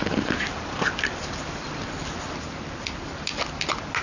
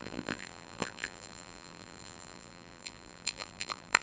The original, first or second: first